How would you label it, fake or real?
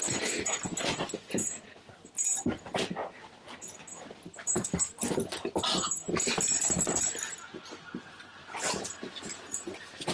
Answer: real